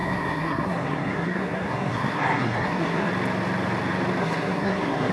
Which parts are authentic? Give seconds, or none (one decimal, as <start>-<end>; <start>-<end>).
3.1-4.2